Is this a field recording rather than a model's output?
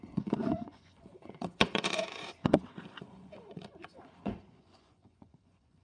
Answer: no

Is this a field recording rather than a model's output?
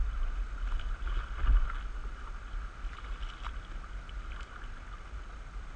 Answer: yes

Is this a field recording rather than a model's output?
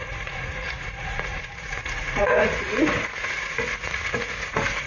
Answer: no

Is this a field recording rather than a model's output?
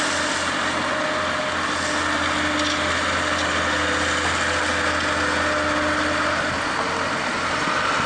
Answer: yes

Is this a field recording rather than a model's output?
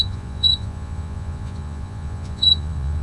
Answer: no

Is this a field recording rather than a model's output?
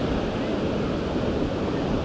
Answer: yes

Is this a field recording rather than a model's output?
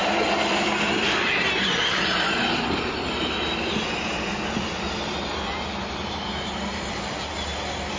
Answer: yes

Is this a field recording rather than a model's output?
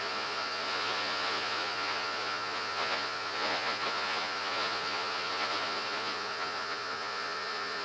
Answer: no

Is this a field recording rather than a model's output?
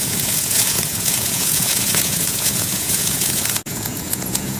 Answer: no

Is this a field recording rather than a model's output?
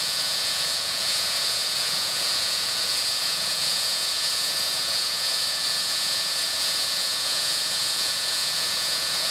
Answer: no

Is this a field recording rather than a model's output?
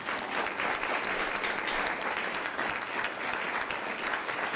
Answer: yes